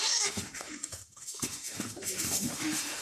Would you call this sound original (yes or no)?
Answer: no